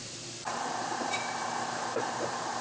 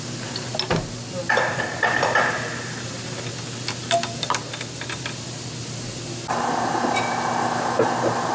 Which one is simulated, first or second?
first